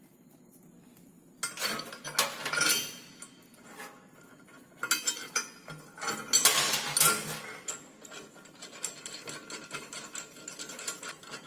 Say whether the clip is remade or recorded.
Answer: recorded